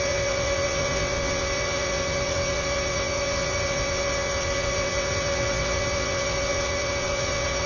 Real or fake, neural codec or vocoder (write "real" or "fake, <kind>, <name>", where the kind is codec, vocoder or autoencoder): fake, vocoder, WaveNeXt